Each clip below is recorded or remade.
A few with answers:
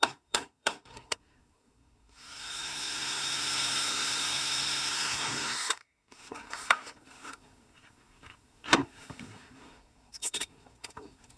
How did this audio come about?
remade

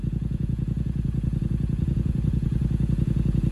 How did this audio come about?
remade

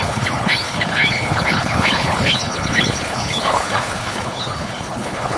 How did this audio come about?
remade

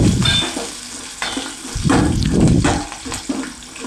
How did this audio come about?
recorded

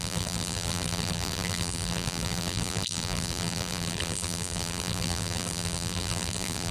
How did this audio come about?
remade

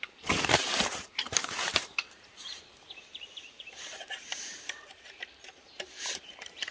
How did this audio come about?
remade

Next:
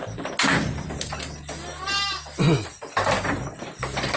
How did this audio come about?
recorded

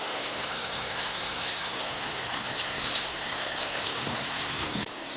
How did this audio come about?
remade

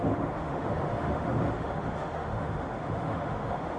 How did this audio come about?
remade